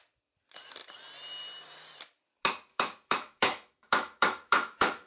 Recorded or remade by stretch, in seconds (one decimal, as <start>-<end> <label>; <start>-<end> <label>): 0.0-2.7 recorded; 2.7-5.1 remade